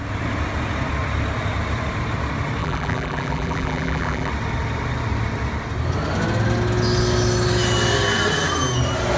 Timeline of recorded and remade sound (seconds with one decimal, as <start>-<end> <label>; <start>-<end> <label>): 0.0-2.6 recorded; 2.6-4.3 remade; 4.3-9.2 recorded